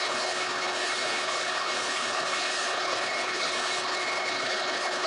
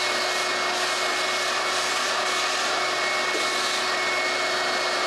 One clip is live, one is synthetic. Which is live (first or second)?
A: second